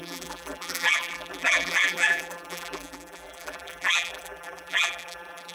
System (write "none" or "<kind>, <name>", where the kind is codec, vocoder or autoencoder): vocoder, BigVGAN v2